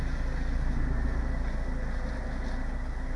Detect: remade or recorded recorded